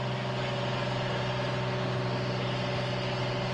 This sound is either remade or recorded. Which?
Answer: recorded